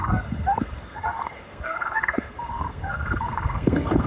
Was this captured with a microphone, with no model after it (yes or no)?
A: no